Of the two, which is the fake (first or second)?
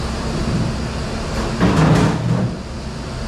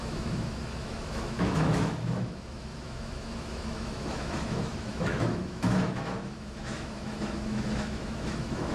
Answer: second